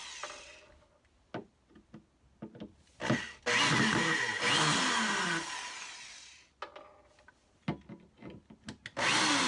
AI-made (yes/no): no